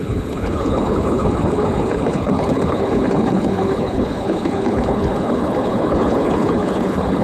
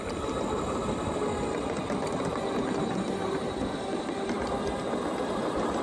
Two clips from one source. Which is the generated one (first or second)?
first